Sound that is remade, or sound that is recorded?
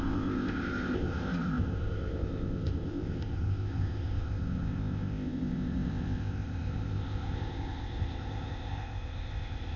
remade